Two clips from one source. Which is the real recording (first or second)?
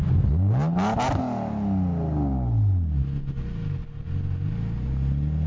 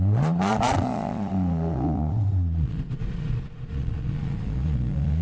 first